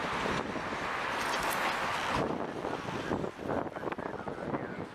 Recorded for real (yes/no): yes